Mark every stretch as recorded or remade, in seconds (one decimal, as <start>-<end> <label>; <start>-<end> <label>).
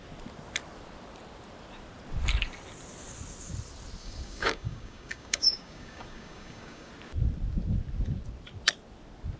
0.0-4.0 recorded; 4.0-6.9 remade; 6.9-9.4 recorded